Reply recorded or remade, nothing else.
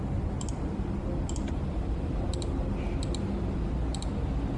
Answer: recorded